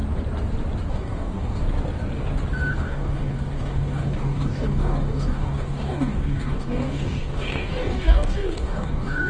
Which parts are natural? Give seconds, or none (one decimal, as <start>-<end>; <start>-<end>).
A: 0.0-0.9; 1.6-2.7